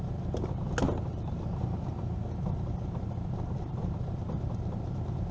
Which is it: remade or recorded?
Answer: recorded